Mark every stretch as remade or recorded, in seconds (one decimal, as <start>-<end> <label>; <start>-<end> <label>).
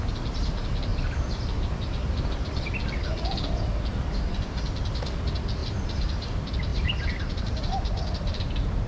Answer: 0.0-0.9 recorded; 0.9-2.7 remade; 2.7-6.7 recorded; 6.7-8.9 remade